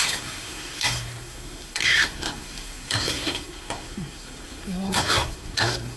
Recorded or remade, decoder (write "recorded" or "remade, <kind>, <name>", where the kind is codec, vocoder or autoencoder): remade, codec, SNAC